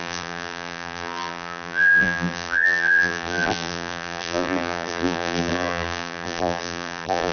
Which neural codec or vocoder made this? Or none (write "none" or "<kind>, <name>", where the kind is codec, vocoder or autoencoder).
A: vocoder, BigVGAN v2